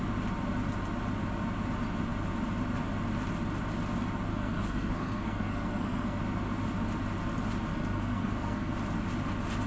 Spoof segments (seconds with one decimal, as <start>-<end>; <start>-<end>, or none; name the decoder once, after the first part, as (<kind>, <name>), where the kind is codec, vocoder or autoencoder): 4.3-6.2 (codec, SNAC); 7.7-8.7